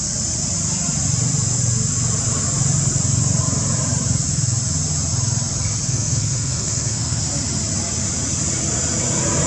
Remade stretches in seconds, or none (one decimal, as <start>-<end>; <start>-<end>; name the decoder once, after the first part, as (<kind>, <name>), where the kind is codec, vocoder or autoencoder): 5.9-7.2 (codec, SNAC)